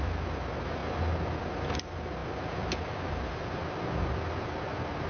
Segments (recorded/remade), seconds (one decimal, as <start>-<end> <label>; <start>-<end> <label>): 0.0-5.1 recorded